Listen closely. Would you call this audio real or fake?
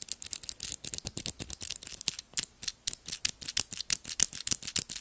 real